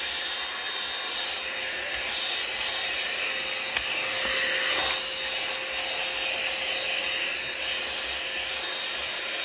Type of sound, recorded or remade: recorded